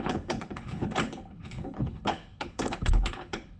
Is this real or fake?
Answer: fake